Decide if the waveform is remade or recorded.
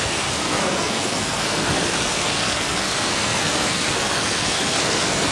remade